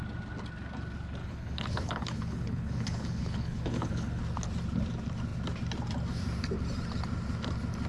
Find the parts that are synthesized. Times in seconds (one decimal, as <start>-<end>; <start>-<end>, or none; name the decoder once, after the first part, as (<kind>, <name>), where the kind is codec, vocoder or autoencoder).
1.2-4.2 (codec, HILCodec)